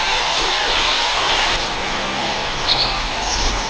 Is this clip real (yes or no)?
no